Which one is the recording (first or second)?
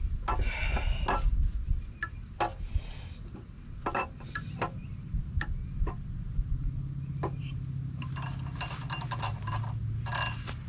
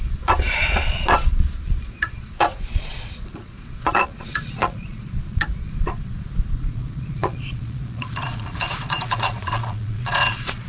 first